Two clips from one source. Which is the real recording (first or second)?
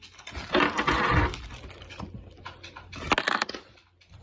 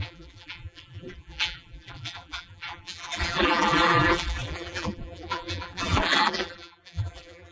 first